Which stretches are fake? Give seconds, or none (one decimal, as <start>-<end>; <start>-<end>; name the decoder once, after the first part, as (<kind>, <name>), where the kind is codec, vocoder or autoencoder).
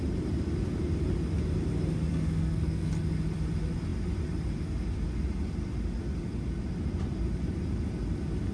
2.1-2.9 (codec, SNAC)